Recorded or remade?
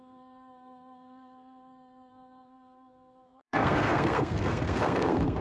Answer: remade